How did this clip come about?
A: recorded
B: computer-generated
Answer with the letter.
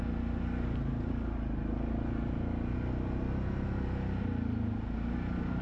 A